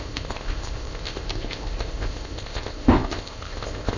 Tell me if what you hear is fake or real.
fake